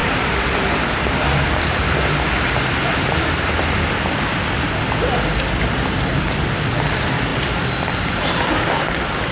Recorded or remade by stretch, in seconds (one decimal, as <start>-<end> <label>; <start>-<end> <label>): 0.0-2.0 remade; 2.0-7.3 recorded; 7.3-8.8 remade; 8.8-9.3 recorded